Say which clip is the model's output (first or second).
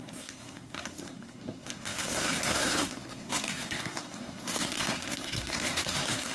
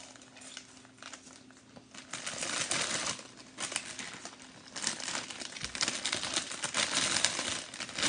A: first